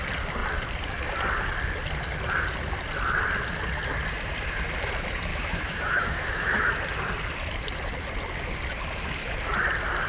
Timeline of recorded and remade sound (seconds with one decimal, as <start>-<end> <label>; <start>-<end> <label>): 0.0-5.3 recorded; 5.3-6.7 remade; 6.7-10.1 recorded